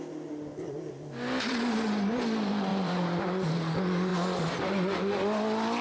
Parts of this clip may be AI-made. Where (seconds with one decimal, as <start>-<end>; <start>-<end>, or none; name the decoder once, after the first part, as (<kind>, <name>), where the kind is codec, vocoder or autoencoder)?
2.7-3.2 (vocoder, BigVGAN v2)